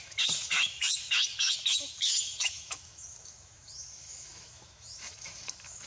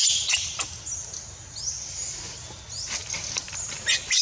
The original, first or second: second